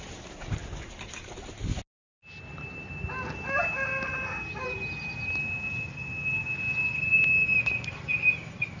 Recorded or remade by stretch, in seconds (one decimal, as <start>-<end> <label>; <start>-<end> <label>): 0.0-8.8 recorded